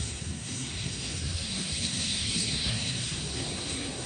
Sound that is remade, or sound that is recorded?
remade